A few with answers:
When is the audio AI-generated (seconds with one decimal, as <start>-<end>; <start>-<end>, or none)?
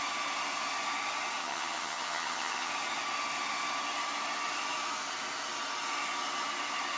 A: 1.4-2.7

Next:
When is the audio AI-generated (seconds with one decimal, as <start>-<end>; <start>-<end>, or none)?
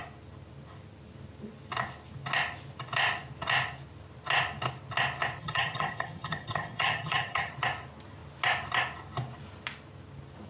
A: 5.4-7.5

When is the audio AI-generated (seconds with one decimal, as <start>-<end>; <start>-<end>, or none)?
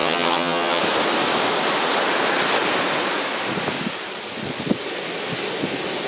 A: 0.0-0.8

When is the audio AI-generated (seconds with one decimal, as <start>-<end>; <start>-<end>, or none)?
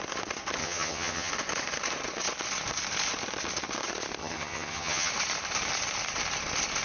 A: 0.6-1.3; 4.2-5.1